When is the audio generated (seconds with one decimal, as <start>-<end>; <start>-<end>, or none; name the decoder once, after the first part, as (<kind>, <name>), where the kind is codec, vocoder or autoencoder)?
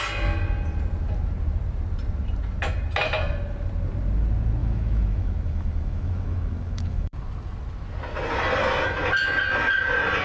4.6-7.1 (autoencoder, DAC-VAE)